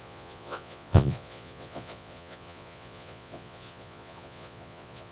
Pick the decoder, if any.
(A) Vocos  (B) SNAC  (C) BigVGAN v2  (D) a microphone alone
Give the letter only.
A